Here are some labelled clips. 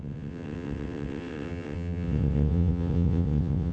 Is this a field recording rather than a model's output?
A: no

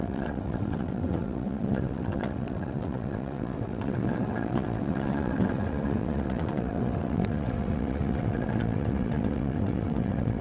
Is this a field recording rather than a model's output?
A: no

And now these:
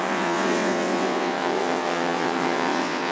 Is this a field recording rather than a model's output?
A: no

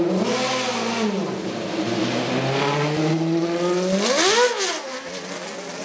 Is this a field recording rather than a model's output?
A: yes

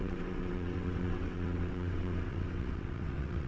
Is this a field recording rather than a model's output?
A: no